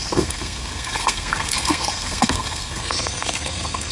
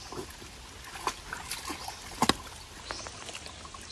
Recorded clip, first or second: second